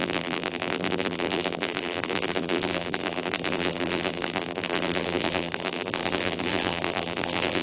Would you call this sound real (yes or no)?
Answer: no